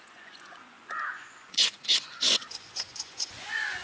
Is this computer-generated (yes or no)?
yes